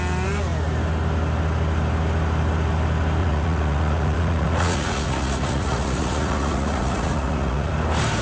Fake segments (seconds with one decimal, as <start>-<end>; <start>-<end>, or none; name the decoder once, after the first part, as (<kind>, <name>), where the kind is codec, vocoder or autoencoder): 3.2-7.7 (vocoder, Vocos)